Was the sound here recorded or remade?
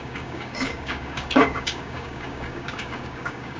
remade